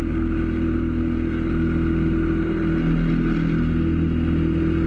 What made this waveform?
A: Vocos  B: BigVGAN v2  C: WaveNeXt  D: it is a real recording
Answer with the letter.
D